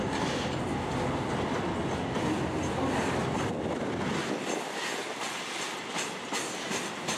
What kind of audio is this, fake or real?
real